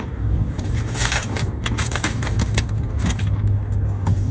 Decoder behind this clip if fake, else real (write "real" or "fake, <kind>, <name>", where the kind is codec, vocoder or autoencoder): fake, codec, DAC